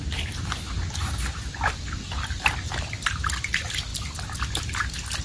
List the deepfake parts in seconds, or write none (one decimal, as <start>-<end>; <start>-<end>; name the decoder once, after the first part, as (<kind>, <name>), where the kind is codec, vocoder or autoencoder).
1.0-2.8 (vocoder, BigVGAN v2)